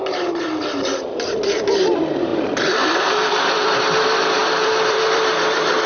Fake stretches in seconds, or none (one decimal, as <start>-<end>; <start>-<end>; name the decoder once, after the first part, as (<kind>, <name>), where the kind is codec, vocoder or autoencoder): 0.0-5.9 (vocoder, BigVGAN v2)